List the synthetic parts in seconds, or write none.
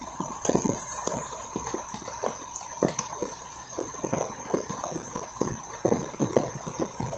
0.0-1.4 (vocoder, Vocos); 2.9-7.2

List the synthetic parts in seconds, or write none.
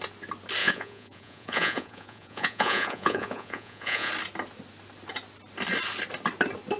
0.6-4.1 (vocoder, Vocos)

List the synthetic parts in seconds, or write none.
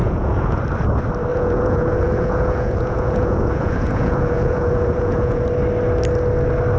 0.0-0.6 (vocoder, Vocos); 1.3-5.4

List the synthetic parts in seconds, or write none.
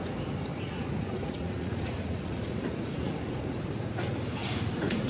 0.5-3.6 (vocoder, Vocos); 4.4-5.1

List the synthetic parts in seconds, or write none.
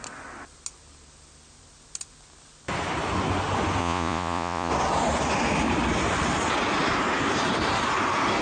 3.8-4.7 (vocoder, Vocos)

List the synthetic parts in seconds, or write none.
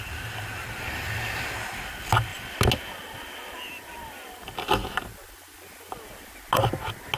none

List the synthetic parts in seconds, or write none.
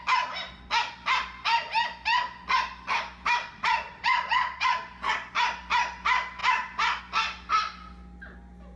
3.4-4.7 (vocoder, Vocos)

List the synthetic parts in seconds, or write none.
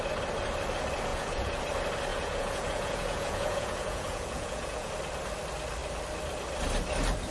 1.1-1.6 (vocoder, Vocos); 2.1-4.9